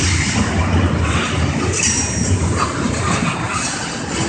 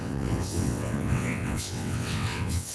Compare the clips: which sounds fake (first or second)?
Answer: second